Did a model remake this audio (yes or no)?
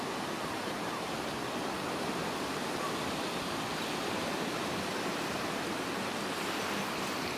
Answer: no